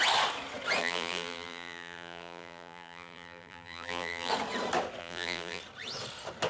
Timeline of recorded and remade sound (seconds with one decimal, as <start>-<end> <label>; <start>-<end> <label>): 0.0-0.8 recorded; 0.8-4.3 remade; 4.3-5.0 recorded; 5.0-5.6 remade; 5.6-6.5 recorded